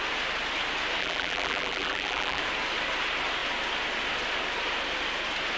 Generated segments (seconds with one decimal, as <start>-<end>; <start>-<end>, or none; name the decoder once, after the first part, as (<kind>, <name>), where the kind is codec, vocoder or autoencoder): 1.0-2.4 (vocoder, BigVGAN v2)